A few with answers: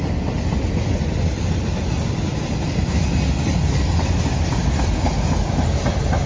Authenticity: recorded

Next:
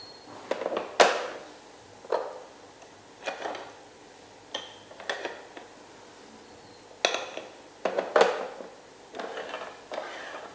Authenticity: recorded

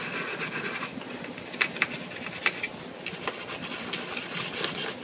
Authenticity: recorded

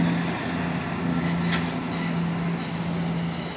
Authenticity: recorded